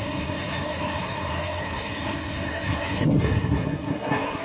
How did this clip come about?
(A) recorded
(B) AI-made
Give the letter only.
B